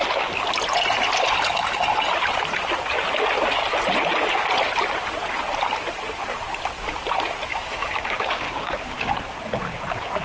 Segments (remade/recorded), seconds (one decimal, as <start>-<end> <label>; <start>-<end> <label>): 0.0-7.5 recorded; 7.5-9.1 remade; 9.1-10.2 recorded